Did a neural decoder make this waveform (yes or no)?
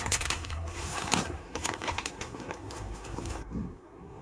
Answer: yes